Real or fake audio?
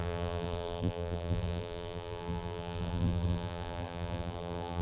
fake